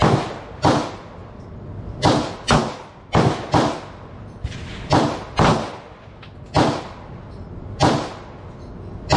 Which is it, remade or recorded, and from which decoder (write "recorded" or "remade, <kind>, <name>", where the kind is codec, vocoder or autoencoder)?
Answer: recorded